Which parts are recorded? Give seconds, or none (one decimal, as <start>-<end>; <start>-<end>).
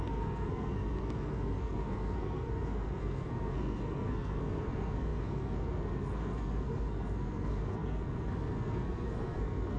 none